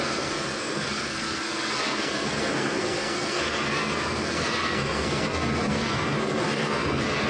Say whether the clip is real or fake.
fake